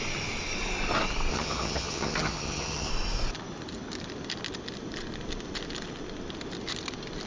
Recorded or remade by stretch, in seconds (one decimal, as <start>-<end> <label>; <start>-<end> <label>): 0.0-1.3 recorded; 1.3-2.9 remade; 2.9-7.3 recorded